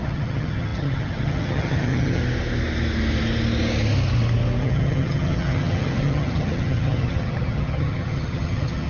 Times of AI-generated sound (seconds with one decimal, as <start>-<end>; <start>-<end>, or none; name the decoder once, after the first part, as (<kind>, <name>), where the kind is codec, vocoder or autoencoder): 0.0-2.2 (vocoder, HiFi-GAN); 4.6-8.9